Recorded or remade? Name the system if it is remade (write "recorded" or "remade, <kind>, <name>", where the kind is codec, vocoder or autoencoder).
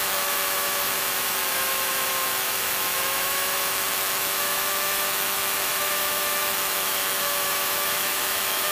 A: remade, autoencoder, DAC-VAE